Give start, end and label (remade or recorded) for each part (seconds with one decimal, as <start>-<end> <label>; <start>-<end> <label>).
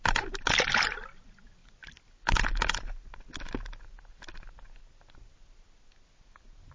0.0-6.7 recorded